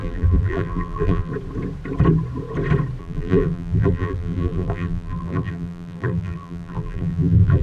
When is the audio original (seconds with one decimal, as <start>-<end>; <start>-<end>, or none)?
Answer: 1.3-3.0